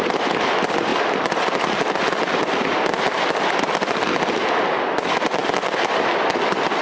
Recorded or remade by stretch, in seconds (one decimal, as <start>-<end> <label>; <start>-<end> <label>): 0.0-6.8 recorded